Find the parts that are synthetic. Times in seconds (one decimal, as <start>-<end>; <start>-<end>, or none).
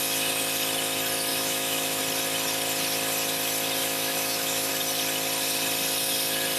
1.3-2.0; 3.8-4.7